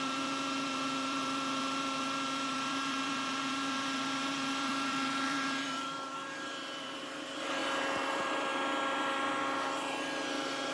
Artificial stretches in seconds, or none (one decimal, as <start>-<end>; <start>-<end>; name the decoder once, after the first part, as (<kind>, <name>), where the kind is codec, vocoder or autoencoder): 0.0-7.6 (vocoder, BigVGAN v2); 8.1-8.5